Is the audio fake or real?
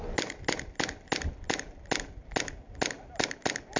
real